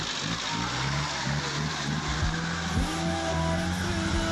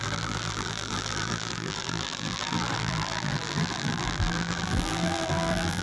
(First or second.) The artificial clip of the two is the second